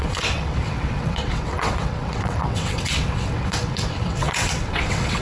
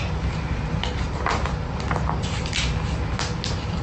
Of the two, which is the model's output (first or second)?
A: first